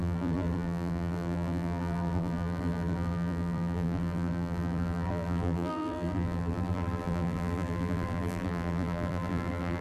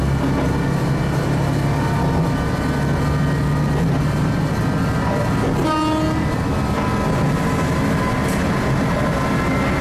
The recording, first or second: second